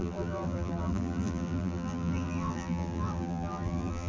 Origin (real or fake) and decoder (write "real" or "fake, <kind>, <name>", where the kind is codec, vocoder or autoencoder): fake, vocoder, BigVGAN v2